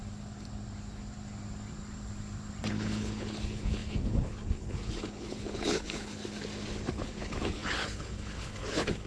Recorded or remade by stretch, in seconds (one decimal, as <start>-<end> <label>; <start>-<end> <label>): 0.0-2.7 recorded; 2.7-6.2 remade; 6.2-6.9 recorded; 6.9-9.1 remade